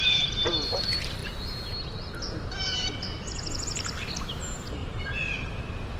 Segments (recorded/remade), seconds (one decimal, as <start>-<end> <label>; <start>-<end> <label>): 0.0-1.2 remade; 1.2-2.2 recorded; 2.2-6.0 remade